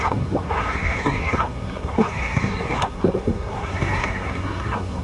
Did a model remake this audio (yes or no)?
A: yes